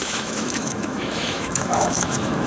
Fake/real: fake